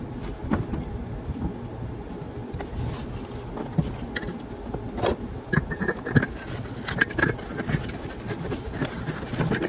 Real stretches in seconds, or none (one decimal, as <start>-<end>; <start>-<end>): 0.0-9.7